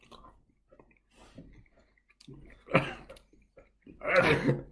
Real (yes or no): yes